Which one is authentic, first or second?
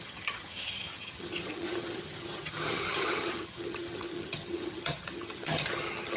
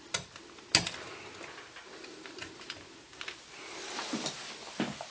second